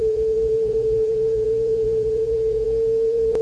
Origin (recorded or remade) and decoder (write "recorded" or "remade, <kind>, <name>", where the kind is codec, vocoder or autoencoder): remade, vocoder, Vocos